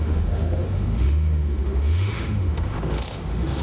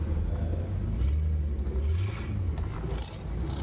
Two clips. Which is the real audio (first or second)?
second